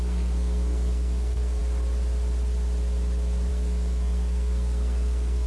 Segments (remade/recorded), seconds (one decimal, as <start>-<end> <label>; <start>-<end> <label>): 0.0-1.6 remade; 1.6-3.5 recorded; 3.5-5.5 remade